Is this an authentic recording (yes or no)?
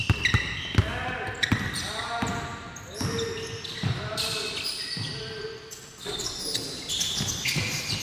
yes